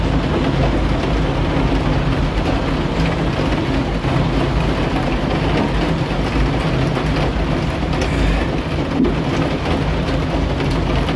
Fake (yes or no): no